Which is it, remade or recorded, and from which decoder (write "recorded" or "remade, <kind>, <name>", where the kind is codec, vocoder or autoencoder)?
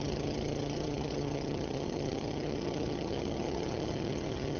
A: remade, vocoder, HiFi-GAN